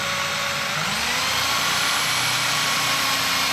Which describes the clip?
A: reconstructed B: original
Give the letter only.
B